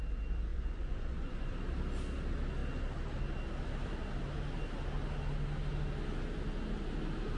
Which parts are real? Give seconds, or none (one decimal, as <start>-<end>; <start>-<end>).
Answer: 0.0-0.5; 1.5-7.4